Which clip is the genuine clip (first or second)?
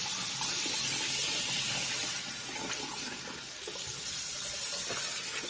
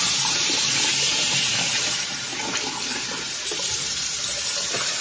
first